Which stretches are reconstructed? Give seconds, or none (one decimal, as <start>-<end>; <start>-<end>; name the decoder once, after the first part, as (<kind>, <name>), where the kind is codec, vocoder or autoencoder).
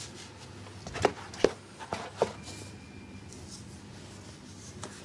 none